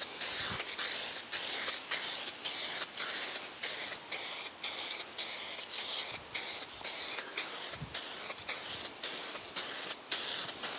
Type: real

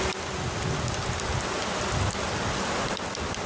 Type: real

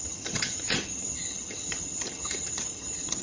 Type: fake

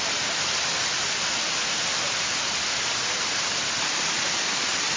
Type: real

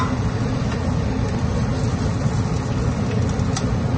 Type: real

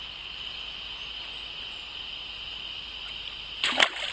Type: real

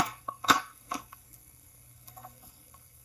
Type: fake